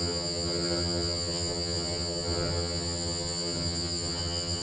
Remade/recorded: remade